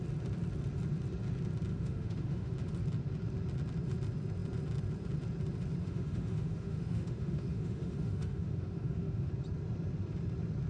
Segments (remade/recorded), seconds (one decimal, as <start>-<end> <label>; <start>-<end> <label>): 0.0-1.7 recorded; 1.7-2.5 remade; 2.5-5.8 recorded; 5.8-9.3 remade; 9.3-10.7 recorded